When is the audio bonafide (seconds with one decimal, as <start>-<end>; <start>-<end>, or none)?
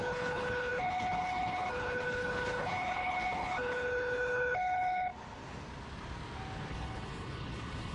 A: 5.1-6.7